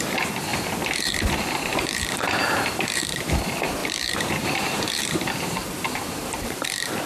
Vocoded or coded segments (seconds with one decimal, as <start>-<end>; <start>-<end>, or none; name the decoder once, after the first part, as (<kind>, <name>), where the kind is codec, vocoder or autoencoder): 0.5-1.2 (vocoder, BigVGAN v2); 1.7-3.4; 3.8-7.1